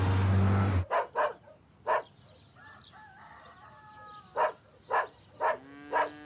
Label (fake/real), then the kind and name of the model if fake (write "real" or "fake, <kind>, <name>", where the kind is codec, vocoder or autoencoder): real